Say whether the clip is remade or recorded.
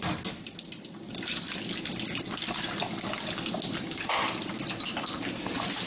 recorded